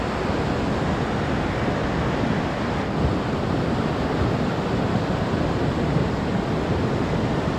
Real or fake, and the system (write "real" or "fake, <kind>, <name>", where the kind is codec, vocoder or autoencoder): real